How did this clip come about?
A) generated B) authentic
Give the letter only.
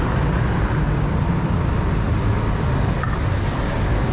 B